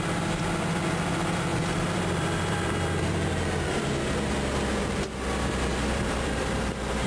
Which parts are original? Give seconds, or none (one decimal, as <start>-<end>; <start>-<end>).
0.0-1.5; 3.4-5.7